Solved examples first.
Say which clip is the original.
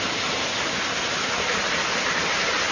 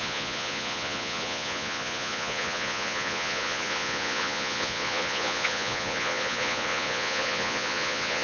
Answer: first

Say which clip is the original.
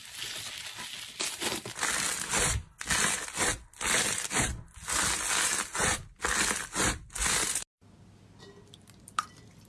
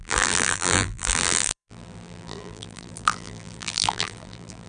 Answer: first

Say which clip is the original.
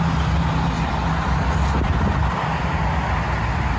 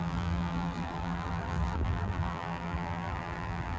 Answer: first